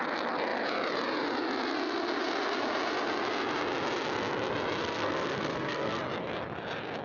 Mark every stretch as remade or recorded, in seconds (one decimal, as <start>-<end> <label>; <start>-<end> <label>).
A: 0.0-4.8 recorded; 4.8-6.0 remade; 6.0-7.0 recorded